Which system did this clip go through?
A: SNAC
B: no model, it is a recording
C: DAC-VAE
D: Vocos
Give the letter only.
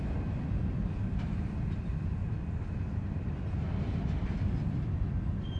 B